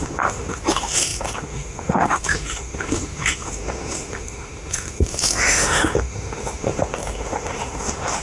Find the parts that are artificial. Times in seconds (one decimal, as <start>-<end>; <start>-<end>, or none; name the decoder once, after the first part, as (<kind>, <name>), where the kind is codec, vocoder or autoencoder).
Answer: 0.0-8.2 (autoencoder, DAC-VAE)